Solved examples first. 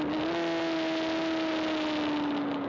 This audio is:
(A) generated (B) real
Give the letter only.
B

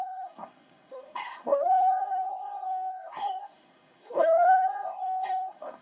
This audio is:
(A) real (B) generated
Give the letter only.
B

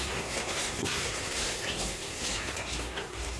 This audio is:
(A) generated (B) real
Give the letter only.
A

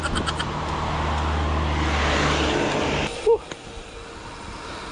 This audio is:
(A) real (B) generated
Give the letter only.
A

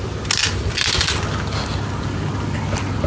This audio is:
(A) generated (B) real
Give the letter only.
B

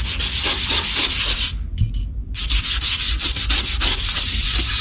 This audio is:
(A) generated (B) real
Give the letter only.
B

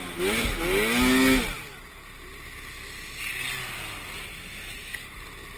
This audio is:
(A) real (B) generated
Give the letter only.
A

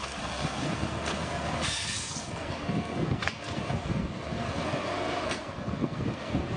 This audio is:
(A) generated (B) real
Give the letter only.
A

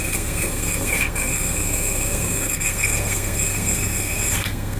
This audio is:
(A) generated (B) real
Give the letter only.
A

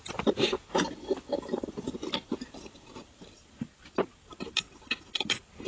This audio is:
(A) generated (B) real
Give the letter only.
B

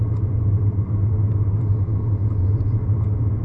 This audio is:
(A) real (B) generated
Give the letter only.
A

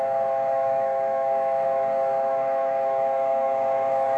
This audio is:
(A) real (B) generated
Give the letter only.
B